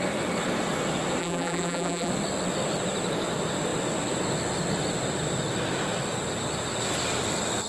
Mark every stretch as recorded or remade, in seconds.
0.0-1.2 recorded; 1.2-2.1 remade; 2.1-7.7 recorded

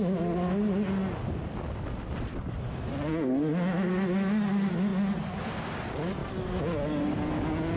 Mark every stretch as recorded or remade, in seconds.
0.0-7.8 recorded

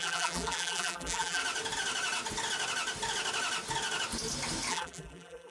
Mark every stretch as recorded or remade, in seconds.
0.0-1.4 remade; 1.4-4.7 recorded; 4.7-5.5 remade

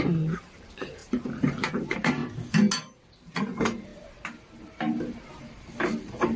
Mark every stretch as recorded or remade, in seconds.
0.0-2.2 remade; 2.2-3.1 recorded; 3.1-3.9 remade; 3.9-5.4 recorded; 5.4-6.4 remade

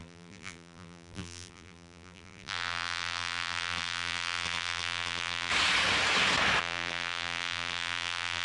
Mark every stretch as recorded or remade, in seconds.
0.0-5.5 remade; 5.5-6.6 recorded; 6.6-8.4 remade